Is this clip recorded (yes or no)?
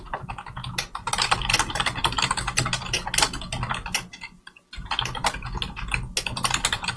yes